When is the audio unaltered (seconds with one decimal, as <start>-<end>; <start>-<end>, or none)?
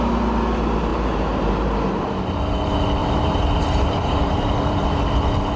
0.0-0.9; 2.1-3.0; 5.0-5.6